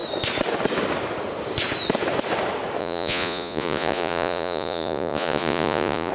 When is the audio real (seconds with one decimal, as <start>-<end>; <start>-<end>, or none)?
0.0-2.8